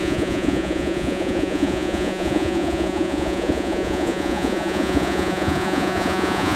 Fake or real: fake